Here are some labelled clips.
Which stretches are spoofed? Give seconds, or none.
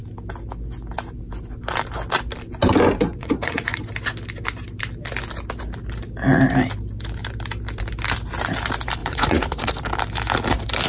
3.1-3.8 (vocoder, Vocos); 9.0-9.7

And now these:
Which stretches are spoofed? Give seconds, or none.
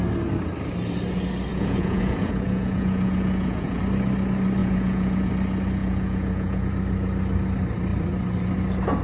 1.5-3.8 (vocoder, Vocos); 4.6-5.3; 5.8-6.7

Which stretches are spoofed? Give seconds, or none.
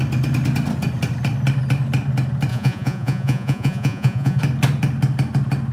2.5-4.4 (vocoder, Vocos)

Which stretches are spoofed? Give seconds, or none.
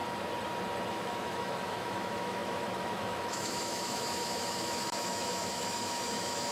0.9-6.5 (autoencoder, DAC-VAE)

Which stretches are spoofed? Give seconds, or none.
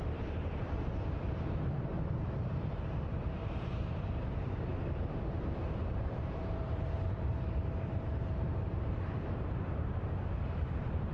0.0-4.7 (vocoder, BigVGAN v2); 6.0-11.1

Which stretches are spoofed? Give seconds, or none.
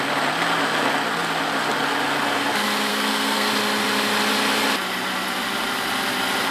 2.9-3.5 (codec, SNAC)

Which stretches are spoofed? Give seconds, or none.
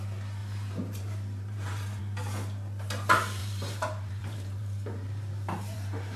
0.4-2.0 (vocoder, BigVGAN v2); 3.4-6.2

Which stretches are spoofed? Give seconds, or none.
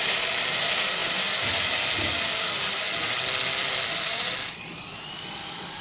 0.0-1.0 (vocoder, BigVGAN v2); 4.5-5.8